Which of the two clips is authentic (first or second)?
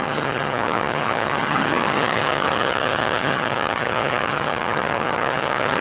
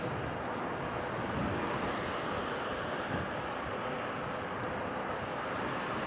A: second